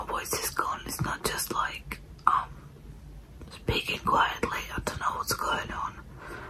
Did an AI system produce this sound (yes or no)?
yes